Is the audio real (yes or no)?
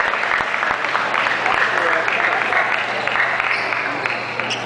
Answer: yes